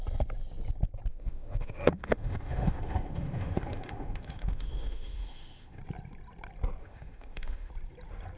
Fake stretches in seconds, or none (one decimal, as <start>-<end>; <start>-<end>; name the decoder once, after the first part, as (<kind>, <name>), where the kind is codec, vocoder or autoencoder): 1.1-5.8 (autoencoder, DAC-VAE); 6.8-7.7